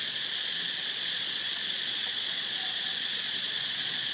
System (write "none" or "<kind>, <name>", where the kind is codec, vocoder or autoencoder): vocoder, Vocos